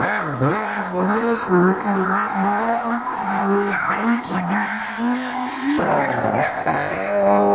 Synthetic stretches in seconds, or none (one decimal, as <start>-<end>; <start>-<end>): 0.0-5.8; 6.4-7.5